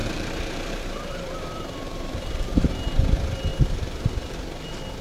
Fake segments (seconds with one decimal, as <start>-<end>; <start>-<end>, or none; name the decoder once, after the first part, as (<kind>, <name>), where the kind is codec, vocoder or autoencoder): 0.0-2.7 (vocoder, BigVGAN v2)